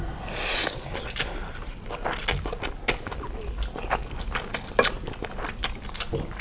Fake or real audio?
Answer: real